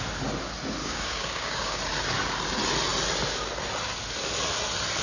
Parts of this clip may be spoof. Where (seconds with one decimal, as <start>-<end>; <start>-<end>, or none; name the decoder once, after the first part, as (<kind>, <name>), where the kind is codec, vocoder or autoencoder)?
0.8-1.8 (codec, DAC)